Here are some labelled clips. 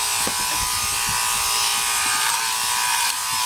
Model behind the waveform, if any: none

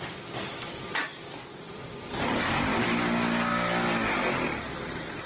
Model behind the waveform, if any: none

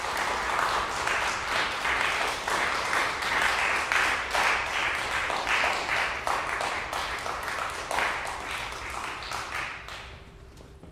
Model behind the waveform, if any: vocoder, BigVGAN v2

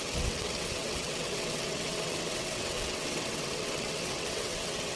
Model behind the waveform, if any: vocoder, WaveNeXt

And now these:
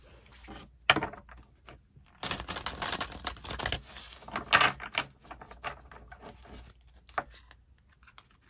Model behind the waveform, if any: none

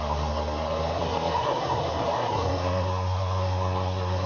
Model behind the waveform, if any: codec, SNAC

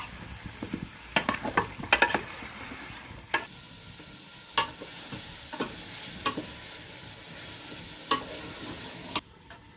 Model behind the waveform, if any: none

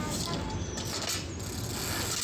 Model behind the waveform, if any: none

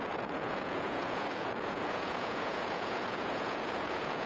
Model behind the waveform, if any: vocoder, Vocos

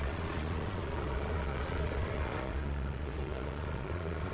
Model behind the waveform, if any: vocoder, Vocos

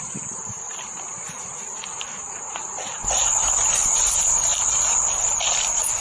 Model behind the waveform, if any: none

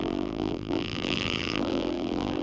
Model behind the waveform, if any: vocoder, BigVGAN v2